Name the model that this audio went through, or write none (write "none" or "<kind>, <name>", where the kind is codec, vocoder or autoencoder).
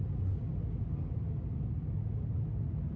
none